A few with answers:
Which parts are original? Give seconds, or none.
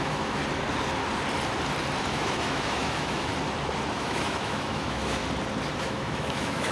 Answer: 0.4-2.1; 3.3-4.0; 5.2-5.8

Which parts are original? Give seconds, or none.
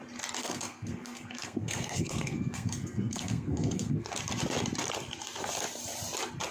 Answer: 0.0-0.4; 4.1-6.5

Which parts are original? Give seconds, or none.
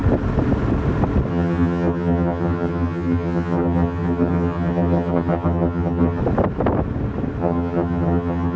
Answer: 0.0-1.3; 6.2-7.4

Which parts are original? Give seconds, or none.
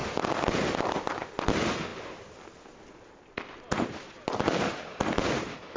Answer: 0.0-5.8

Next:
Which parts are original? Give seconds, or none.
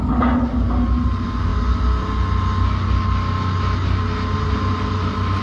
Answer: 0.0-5.4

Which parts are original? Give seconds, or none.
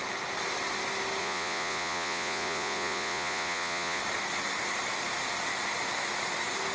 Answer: 0.0-1.2; 4.0-6.7